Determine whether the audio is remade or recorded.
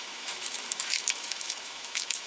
remade